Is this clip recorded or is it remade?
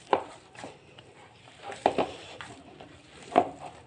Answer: remade